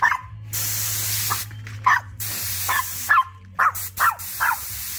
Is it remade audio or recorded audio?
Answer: recorded